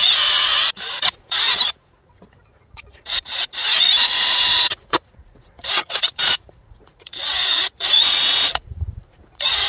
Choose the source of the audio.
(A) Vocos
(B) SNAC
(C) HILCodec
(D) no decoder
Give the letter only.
A